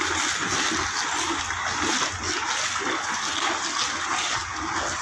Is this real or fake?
real